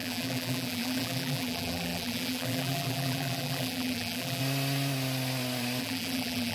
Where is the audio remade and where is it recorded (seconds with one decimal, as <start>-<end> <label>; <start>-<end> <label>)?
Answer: 0.0-4.4 remade; 4.4-5.8 recorded; 5.8-6.5 remade